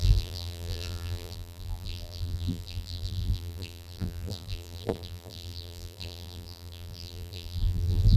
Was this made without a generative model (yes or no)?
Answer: no